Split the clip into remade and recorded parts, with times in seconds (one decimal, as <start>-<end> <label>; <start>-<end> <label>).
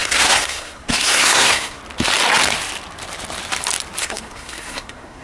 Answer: 0.0-1.8 remade; 1.8-4.0 recorded; 4.0-5.2 remade